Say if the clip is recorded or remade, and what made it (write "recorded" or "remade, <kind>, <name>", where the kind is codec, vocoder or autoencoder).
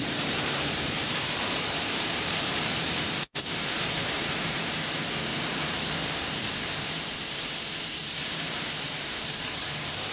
remade, vocoder, BigVGAN v2